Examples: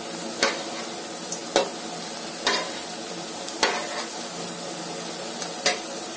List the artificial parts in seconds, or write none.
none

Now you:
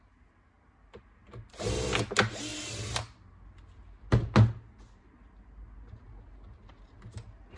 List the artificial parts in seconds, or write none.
none

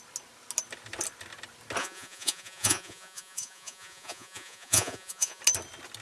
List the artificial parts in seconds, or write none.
1.8-5.4 (vocoder, Vocos)

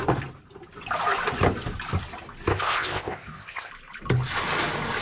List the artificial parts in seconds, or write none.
2.5-3.7 (codec, ZipCodec)

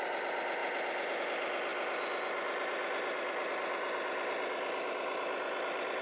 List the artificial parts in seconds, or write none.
none

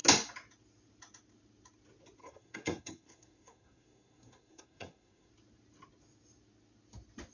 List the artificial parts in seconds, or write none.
2.2-5.3 (codec, SNAC)

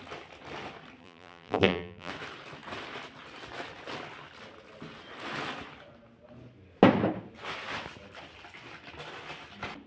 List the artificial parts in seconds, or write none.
1.0-2.1 (vocoder, BigVGAN v2)